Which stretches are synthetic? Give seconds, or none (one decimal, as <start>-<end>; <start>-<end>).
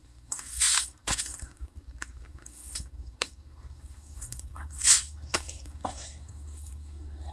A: 0.0-7.3